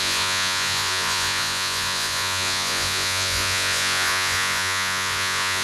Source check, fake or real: fake